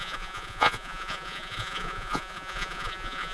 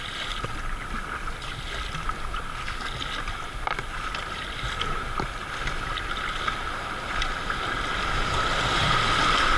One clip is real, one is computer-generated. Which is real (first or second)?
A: second